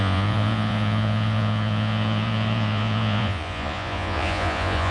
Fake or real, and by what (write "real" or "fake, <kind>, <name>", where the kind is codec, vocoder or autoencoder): fake, vocoder, Vocos